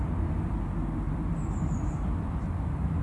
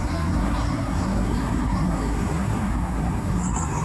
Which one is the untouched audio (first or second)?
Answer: first